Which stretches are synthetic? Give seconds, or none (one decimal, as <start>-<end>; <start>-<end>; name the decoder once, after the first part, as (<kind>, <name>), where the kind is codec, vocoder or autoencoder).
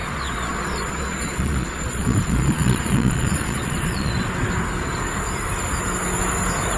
0.0-4.1 (vocoder, Vocos)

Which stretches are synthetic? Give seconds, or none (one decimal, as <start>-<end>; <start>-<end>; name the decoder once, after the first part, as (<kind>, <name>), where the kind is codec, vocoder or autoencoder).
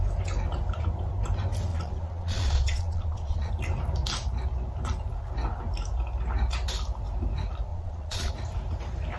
1.7-3.5 (vocoder, Vocos); 7.7-8.3